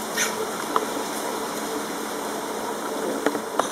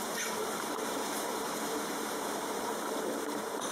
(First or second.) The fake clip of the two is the second